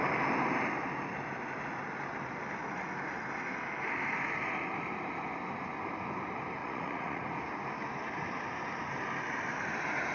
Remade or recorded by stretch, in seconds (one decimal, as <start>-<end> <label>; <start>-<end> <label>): 0.0-6.6 recorded; 6.6-7.3 remade; 7.3-10.1 recorded